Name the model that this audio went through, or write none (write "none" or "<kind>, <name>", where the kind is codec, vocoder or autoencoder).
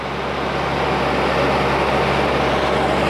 none